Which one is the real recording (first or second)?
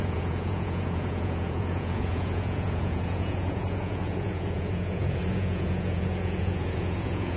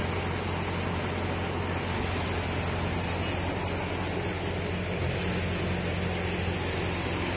second